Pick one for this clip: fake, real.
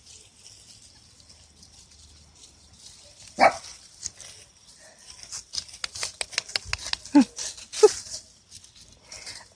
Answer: real